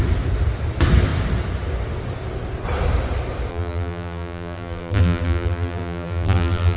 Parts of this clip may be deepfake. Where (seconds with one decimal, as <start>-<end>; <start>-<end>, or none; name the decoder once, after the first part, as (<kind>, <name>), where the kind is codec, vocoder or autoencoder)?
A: 3.5-6.8 (vocoder, BigVGAN v2)